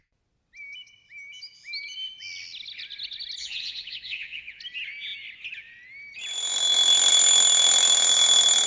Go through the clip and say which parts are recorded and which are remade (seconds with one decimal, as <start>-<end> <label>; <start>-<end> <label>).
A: 0.0-3.4 recorded; 3.4-4.6 remade; 4.6-8.7 recorded